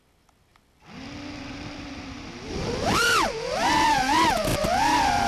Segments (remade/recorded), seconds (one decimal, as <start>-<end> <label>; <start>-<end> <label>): 0.0-0.5 recorded; 0.5-3.7 remade; 3.7-4.5 recorded; 4.5-5.3 remade